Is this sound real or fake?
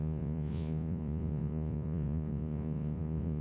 fake